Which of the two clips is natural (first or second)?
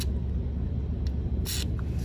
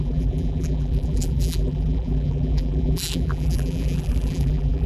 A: first